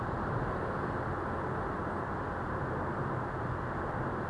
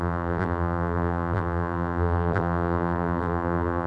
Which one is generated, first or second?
second